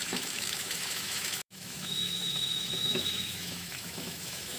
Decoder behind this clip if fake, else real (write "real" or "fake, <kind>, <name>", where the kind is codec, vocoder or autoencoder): fake, autoencoder, DAC-VAE